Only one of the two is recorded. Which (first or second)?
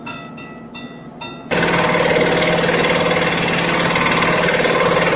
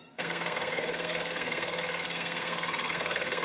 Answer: first